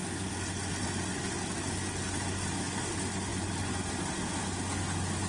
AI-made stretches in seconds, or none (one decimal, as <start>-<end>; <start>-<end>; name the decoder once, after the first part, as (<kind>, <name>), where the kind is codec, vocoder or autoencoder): none